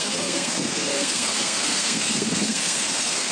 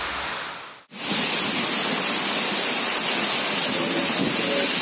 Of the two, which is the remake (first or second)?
first